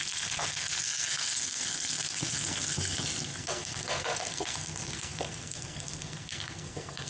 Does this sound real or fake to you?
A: fake